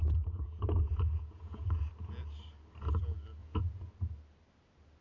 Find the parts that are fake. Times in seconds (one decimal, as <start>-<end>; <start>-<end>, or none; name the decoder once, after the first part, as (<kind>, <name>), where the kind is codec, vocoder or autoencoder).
0.0-1.8 (vocoder, Vocos); 3.4-3.9